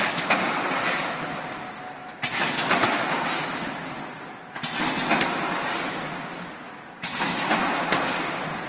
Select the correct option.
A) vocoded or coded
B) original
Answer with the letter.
B